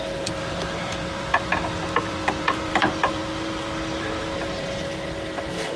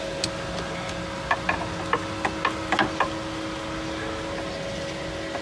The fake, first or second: first